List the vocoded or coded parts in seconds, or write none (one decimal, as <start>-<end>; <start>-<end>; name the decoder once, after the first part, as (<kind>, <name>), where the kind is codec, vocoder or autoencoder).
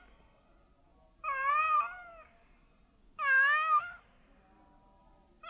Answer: 3.0-4.0 (autoencoder, DAC-VAE)